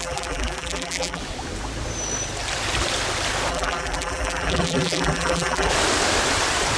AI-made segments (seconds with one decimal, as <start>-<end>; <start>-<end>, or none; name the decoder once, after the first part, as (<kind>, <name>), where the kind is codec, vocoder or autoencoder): 0.0-1.2 (vocoder, BigVGAN v2); 3.5-5.7